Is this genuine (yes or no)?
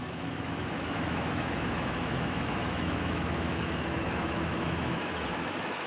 no